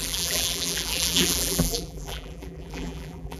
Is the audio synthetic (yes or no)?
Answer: yes